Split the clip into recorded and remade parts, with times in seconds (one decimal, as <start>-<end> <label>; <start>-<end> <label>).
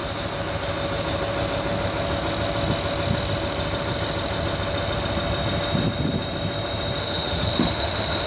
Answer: 0.0-7.0 recorded; 7.0-8.3 remade